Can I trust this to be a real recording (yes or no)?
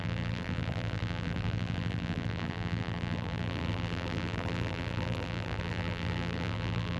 no